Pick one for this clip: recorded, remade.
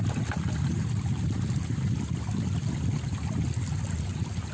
recorded